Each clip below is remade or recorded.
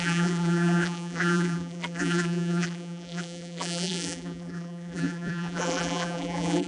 remade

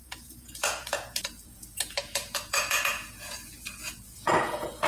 remade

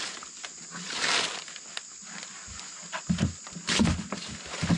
recorded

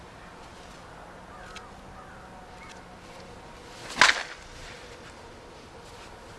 recorded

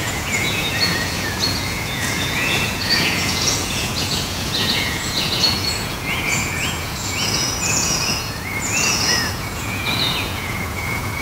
remade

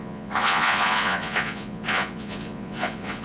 remade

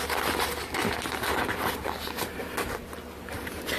recorded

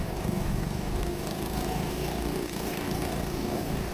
remade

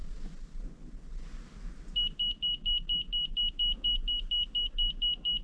recorded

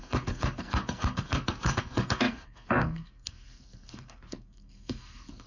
remade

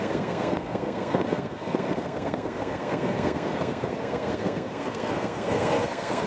remade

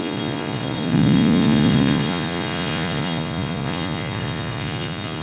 remade